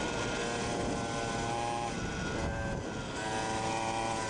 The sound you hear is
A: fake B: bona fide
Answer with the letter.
B